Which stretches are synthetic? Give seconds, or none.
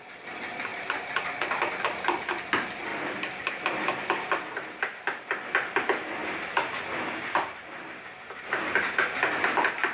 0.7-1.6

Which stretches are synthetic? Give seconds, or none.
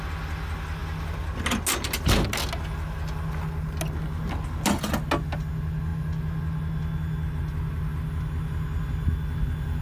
none